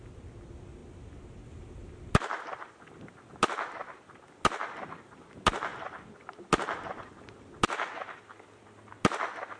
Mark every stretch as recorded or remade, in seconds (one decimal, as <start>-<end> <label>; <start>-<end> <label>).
0.0-9.6 recorded